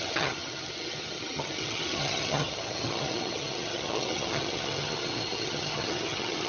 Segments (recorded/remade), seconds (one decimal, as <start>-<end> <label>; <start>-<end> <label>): 0.0-6.5 remade